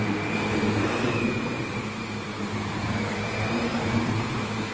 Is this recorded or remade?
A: remade